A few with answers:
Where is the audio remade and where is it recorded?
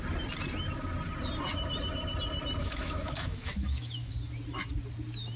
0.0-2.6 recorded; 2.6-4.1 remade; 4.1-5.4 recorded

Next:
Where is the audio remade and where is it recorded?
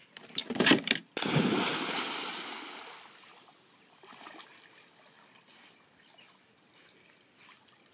0.0-7.9 recorded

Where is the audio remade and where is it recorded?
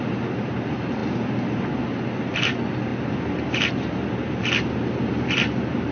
0.0-5.9 recorded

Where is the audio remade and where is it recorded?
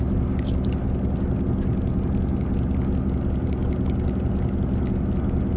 0.0-5.6 recorded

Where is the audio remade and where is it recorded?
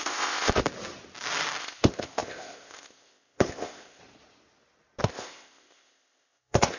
0.0-0.6 remade; 0.6-1.6 recorded; 1.6-4.0 remade; 4.0-5.0 recorded; 5.0-6.8 remade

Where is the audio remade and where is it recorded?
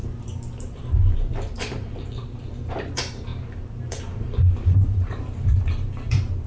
0.0-6.5 remade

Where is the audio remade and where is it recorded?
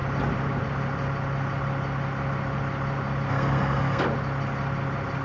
0.0-3.3 recorded; 3.3-4.0 remade; 4.0-5.2 recorded